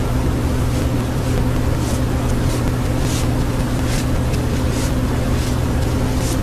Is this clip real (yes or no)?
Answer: yes